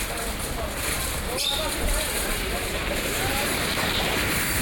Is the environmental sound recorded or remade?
remade